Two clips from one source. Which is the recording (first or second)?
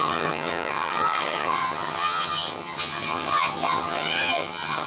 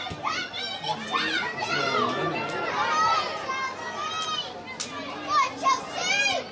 second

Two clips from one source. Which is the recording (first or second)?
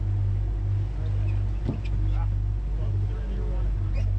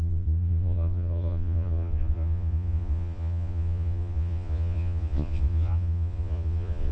first